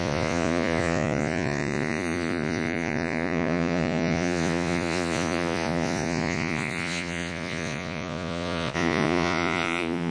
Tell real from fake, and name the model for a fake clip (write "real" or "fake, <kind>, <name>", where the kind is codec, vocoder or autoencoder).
fake, vocoder, Vocos